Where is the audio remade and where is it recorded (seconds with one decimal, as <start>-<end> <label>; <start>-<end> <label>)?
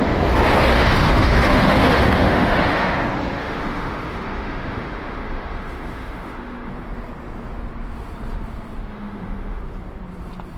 0.0-0.7 recorded; 0.7-2.9 remade; 2.9-3.4 recorded; 3.4-6.7 remade; 6.7-8.9 recorded; 8.9-9.6 remade; 9.6-10.6 recorded